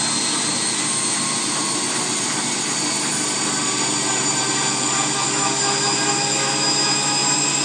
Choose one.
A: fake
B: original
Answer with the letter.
B